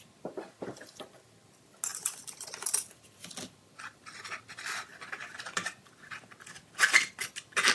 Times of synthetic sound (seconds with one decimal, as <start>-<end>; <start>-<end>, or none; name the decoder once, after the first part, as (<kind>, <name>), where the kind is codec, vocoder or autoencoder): 1.9-2.6 (vocoder, BigVGAN v2); 3.2-5.9